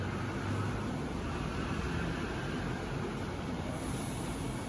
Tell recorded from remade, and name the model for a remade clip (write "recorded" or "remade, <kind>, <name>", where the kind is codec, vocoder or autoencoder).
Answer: recorded